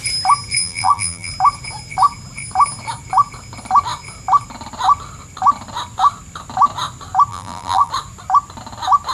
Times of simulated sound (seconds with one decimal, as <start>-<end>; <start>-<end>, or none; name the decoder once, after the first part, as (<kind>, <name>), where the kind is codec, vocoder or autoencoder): 0.6-1.3 (vocoder, BigVGAN v2); 7.3-7.9